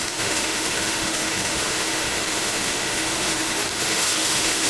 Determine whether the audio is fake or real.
fake